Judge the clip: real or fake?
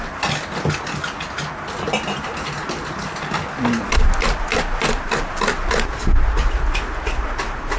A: real